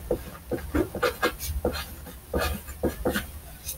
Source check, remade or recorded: recorded